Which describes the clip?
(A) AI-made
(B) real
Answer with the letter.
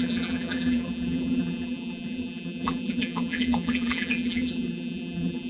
A